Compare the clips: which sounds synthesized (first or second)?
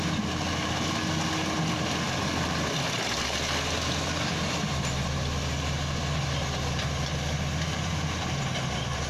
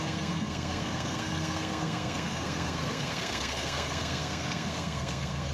second